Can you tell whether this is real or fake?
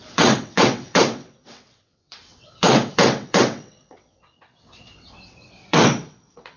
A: fake